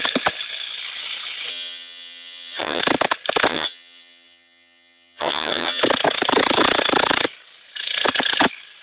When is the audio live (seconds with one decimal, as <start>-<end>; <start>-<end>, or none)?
0.0-1.5; 2.8-3.5; 5.8-8.8

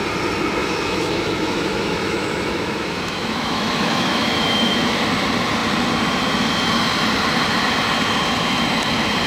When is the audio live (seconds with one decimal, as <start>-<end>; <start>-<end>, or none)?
0.0-0.6; 5.0-9.3